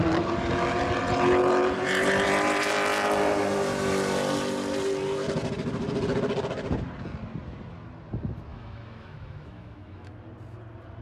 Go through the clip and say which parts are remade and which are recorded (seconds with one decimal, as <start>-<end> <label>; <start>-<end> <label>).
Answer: 0.0-8.5 recorded; 8.5-10.1 remade; 10.1-11.0 recorded